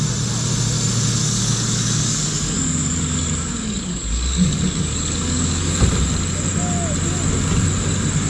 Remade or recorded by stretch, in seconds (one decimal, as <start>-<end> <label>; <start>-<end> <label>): 0.0-1.2 recorded; 1.2-5.7 remade; 5.7-8.3 recorded